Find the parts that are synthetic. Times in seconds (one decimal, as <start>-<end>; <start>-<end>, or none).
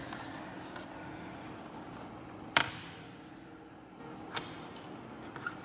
none